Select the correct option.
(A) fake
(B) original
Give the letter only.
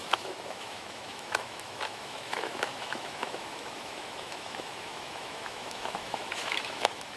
A